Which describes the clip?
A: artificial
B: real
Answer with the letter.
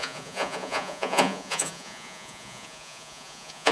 A